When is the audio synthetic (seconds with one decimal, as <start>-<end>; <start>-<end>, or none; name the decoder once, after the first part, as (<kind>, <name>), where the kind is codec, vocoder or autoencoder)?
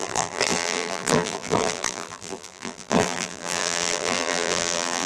0.0-5.1 (vocoder, BigVGAN v2)